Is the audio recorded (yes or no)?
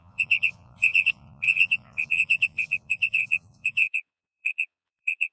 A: no